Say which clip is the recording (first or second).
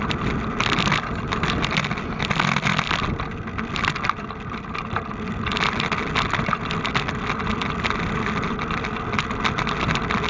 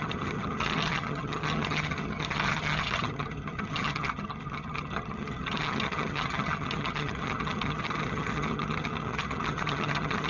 first